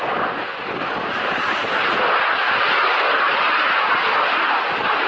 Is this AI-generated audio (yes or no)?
no